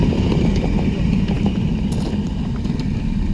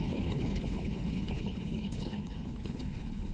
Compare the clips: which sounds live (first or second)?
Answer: first